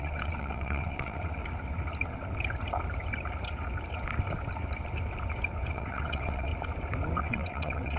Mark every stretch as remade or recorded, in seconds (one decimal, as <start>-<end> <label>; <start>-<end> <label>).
0.0-1.4 remade; 1.4-5.7 recorded; 5.7-6.5 remade; 6.5-7.2 recorded; 7.2-8.0 remade